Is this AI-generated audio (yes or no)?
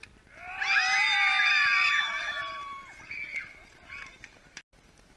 no